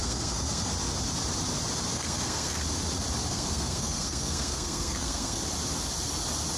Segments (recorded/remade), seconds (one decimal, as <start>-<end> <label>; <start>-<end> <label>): 0.0-0.7 remade; 0.7-1.9 recorded; 1.9-2.6 remade; 2.6-3.3 recorded; 3.3-5.4 remade; 5.4-6.6 recorded